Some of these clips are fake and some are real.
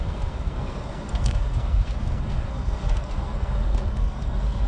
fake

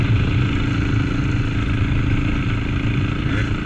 real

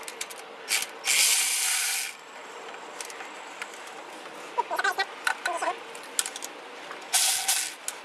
real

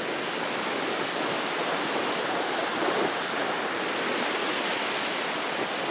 real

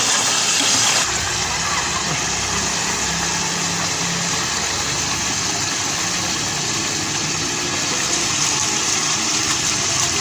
real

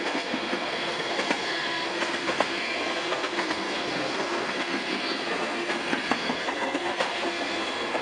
fake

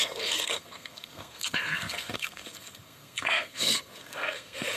fake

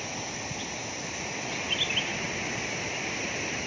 real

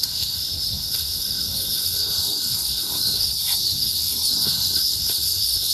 fake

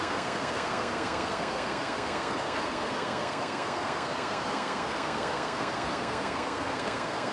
fake